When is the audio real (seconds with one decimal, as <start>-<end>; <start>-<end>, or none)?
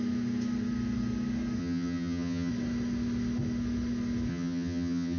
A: 0.0-1.6; 2.5-4.3